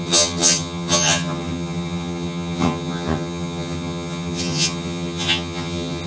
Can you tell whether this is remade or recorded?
remade